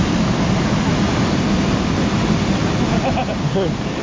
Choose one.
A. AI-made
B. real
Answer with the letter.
B